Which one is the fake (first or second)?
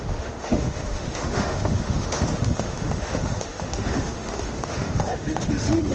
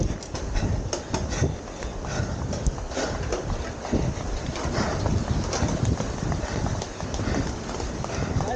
first